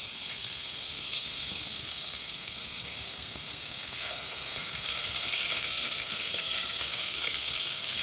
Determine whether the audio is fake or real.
fake